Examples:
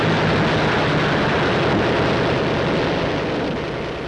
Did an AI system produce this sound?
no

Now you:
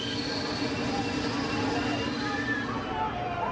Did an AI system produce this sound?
no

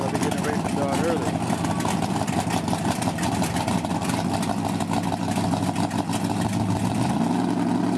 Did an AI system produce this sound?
no